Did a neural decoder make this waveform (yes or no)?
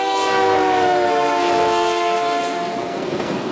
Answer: yes